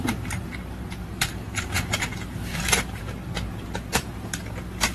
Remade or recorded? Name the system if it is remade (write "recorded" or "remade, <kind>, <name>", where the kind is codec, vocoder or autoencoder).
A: remade, vocoder, BigVGAN v2